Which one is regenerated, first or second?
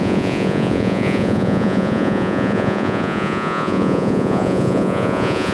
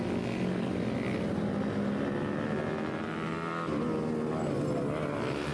first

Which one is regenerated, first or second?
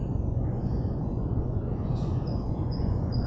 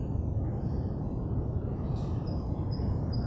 first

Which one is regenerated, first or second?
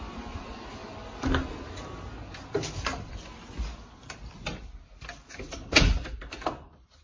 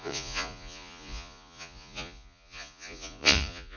second